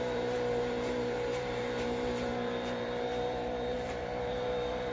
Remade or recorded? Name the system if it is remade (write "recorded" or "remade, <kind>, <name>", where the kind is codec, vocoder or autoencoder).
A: remade, vocoder, BigVGAN v2